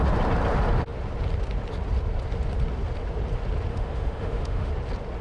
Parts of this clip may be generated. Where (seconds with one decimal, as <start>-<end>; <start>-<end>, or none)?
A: 3.7-4.7